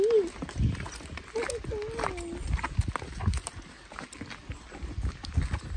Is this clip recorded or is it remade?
recorded